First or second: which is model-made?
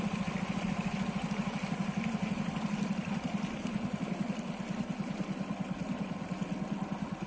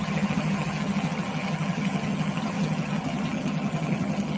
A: second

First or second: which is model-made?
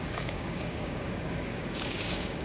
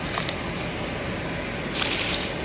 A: first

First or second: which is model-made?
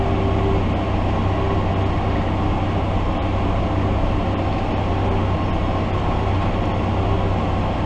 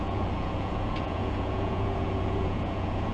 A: second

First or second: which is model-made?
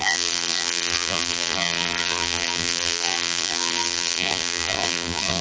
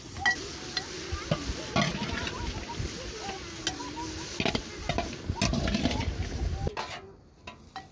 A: first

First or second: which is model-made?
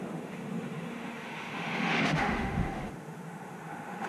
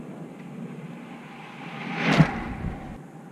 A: first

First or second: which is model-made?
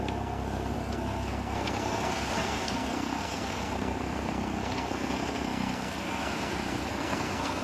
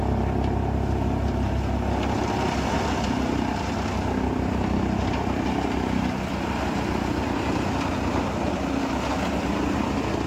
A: first